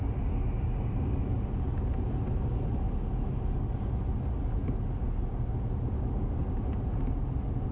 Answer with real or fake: real